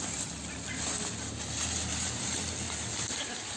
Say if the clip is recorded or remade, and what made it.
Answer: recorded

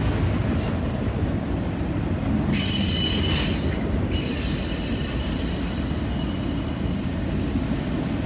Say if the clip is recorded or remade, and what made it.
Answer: recorded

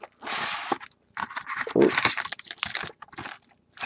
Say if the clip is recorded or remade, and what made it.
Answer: recorded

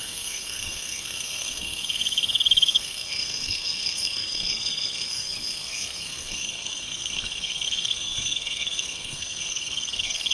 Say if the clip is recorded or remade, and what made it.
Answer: remade, codec, SNAC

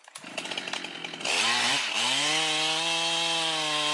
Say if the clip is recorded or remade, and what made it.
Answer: recorded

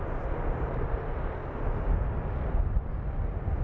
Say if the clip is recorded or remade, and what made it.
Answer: recorded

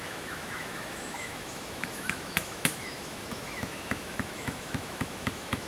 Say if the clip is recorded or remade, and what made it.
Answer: remade, autoencoder, DAC-VAE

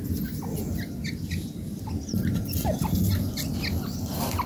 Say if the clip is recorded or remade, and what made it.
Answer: recorded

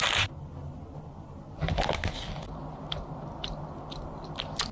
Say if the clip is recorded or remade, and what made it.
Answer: recorded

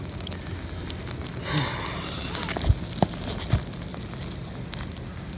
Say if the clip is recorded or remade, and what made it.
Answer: recorded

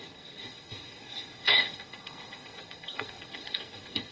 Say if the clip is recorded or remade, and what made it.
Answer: remade, codec, SNAC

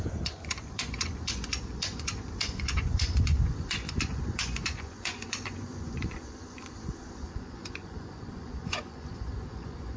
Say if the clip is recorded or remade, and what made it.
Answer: remade, vocoder, Vocos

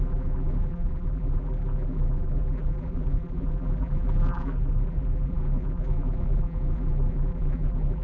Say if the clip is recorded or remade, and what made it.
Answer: remade, vocoder, BigVGAN v2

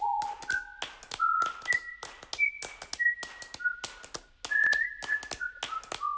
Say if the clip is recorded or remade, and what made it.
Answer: recorded